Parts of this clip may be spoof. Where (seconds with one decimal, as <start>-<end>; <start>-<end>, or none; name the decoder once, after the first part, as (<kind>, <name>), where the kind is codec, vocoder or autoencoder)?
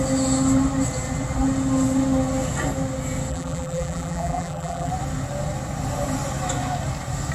3.3-4.9 (vocoder, BigVGAN v2)